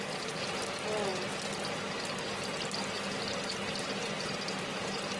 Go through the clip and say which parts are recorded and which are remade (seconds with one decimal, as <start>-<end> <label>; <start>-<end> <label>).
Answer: 0.0-5.2 recorded